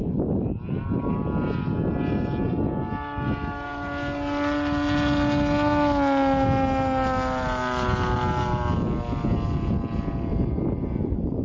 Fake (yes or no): no